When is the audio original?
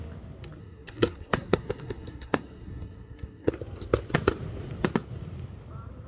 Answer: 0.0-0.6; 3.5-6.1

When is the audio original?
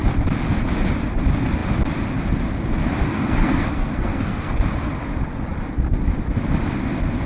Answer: 0.0-3.0; 4.6-7.3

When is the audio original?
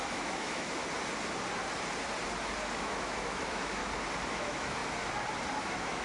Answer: 0.8-2.7; 3.8-4.3; 4.8-5.6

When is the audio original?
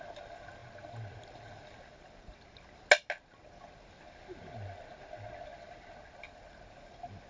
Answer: 0.0-7.3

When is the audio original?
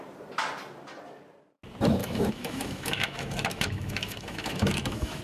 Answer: 0.0-2.0